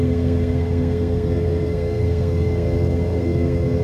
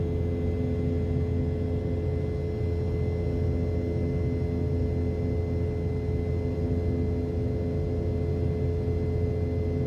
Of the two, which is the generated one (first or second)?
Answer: first